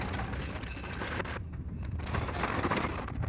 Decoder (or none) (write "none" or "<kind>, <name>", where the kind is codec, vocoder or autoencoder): none